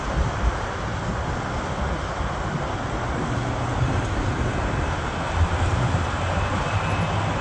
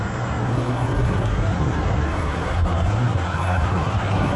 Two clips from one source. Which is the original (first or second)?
first